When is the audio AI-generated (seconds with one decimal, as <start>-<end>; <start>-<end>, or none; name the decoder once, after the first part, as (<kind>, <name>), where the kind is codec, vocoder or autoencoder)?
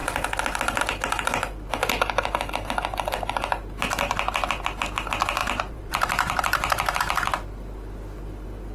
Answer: 5.4-7.0 (vocoder, BigVGAN v2)